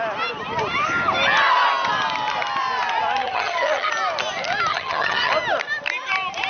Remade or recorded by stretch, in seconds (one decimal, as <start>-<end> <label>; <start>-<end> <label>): 0.0-3.2 recorded; 3.2-3.9 remade; 3.9-4.7 recorded; 4.7-5.3 remade; 5.3-6.5 recorded